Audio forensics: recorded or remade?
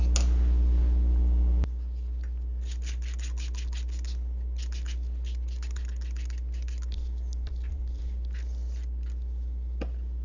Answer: recorded